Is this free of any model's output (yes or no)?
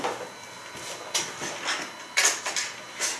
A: yes